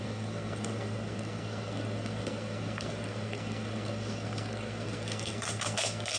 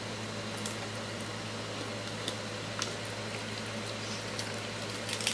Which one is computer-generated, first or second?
first